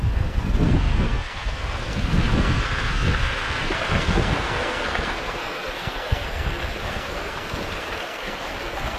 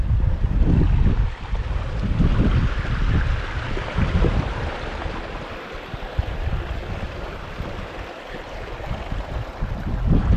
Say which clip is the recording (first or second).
second